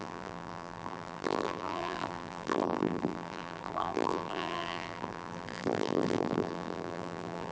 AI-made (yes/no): yes